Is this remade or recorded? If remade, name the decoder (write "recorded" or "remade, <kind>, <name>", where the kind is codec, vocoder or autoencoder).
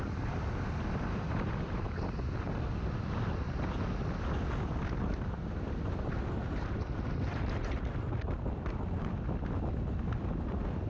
recorded